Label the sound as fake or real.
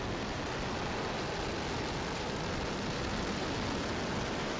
real